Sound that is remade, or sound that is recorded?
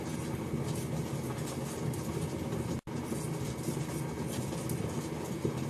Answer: recorded